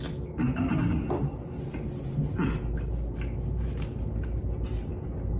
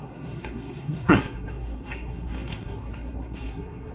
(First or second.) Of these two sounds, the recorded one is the first